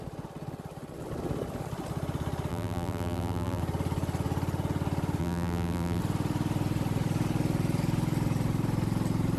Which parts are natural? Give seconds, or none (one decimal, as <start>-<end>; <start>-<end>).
0.0-2.5; 3.6-5.2; 6.0-9.4